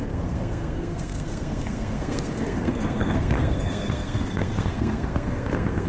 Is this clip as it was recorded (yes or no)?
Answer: no